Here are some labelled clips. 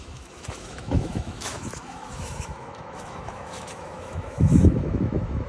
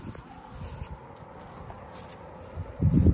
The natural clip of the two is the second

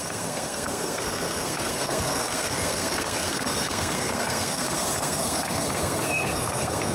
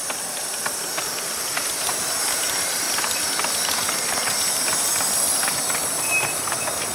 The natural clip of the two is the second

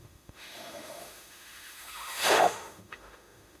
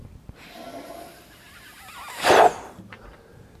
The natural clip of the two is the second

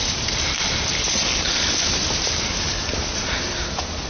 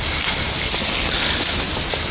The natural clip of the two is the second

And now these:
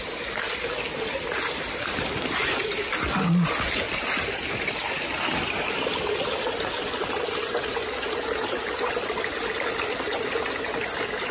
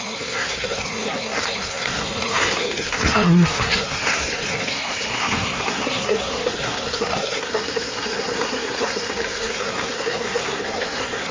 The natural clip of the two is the first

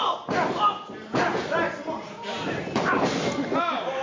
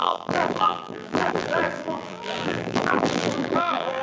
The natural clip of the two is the first